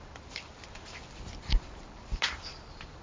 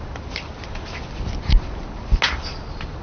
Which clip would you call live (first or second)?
second